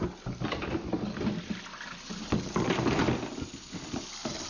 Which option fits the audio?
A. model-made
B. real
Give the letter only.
B